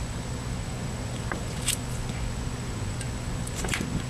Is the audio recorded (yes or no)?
no